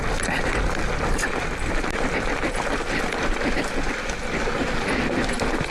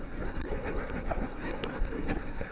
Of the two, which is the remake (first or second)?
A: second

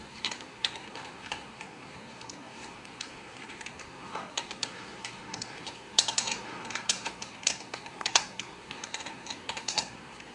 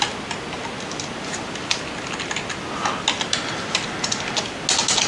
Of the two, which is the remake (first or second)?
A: first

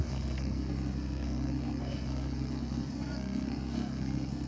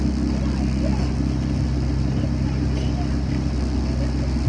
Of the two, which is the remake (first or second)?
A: first